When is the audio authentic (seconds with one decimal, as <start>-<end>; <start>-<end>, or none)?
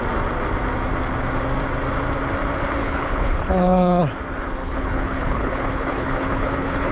0.0-2.8; 4.0-4.6